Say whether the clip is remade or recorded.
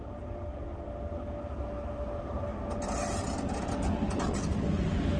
recorded